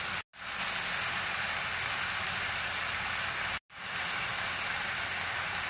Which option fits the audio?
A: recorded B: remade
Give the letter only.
A